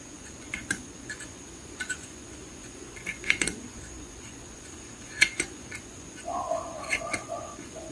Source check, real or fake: fake